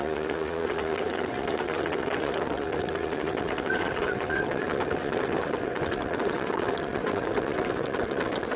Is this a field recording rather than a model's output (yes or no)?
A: no